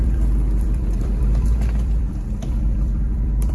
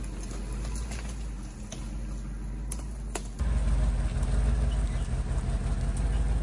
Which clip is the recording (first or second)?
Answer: second